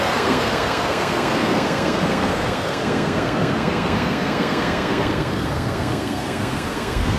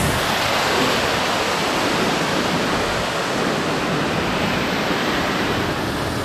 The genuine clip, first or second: second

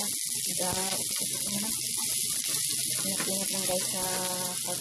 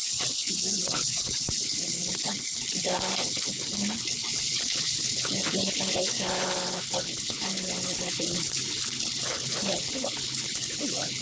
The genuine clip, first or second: first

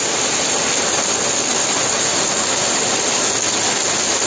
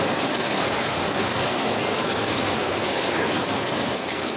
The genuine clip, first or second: first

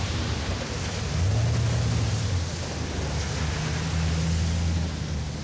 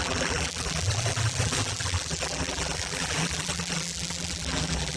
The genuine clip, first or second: first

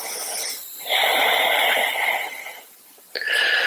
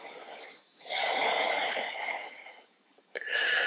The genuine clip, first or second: first